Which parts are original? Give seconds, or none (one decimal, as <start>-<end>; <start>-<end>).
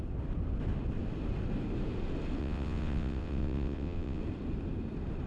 0.0-2.4; 4.2-5.3